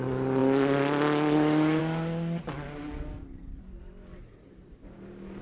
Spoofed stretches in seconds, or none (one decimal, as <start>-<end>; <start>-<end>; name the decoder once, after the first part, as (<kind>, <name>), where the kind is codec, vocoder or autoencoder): none